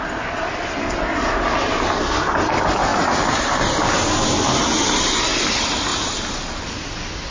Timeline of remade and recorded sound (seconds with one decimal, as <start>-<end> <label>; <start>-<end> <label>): 0.0-7.3 recorded

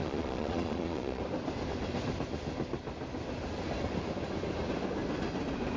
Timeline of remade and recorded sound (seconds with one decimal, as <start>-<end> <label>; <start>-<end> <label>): 0.0-1.2 remade; 1.2-5.8 recorded